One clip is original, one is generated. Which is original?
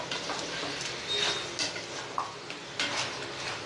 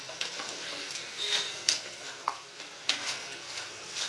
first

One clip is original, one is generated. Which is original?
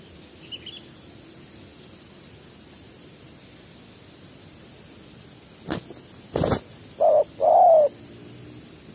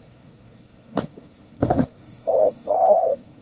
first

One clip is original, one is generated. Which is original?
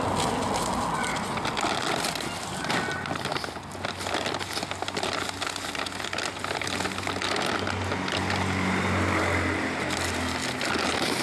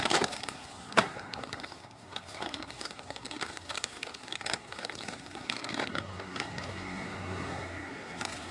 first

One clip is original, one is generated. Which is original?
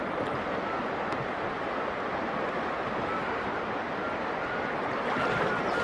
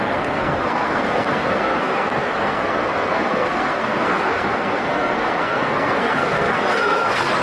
first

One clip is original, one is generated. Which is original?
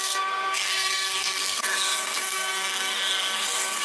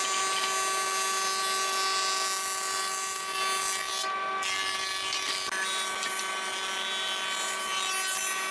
second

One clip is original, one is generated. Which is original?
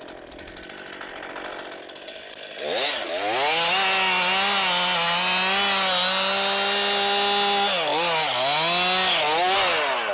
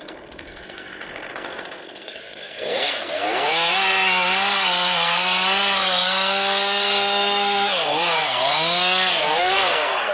first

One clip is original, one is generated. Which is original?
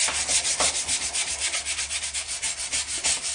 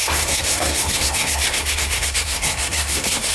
first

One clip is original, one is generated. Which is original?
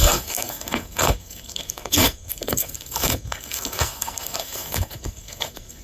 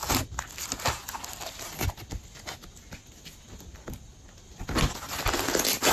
second